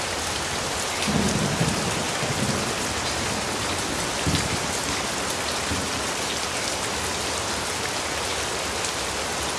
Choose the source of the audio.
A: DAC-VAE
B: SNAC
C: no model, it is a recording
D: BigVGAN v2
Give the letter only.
C